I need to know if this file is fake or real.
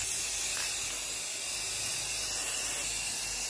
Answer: real